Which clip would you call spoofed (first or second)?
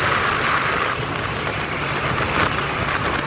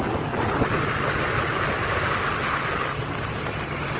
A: first